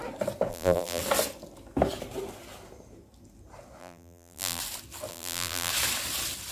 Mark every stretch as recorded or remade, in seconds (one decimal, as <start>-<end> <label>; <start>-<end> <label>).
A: 0.0-0.5 recorded; 0.5-1.0 remade; 1.0-3.8 recorded; 3.8-4.6 remade; 4.6-5.1 recorded; 5.1-5.7 remade; 5.7-6.5 recorded